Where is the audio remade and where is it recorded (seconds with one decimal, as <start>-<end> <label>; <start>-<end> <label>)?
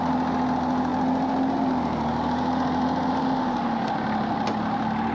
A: 0.0-5.1 recorded